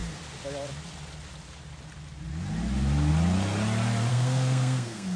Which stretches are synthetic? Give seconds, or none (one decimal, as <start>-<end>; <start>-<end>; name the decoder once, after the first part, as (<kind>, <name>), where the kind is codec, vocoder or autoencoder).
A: 4.1-5.2 (codec, SNAC)